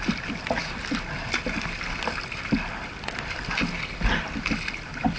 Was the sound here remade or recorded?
recorded